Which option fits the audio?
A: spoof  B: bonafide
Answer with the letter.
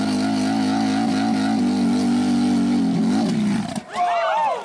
B